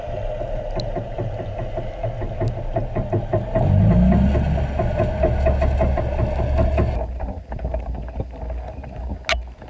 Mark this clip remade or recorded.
recorded